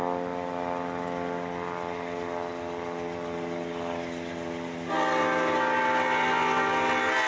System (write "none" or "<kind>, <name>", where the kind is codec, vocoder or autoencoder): none